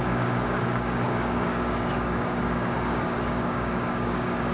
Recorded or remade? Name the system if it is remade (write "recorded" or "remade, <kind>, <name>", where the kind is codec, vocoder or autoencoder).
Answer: remade, codec, DAC